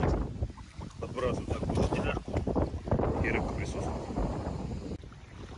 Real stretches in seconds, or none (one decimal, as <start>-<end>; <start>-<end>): 0.0-5.6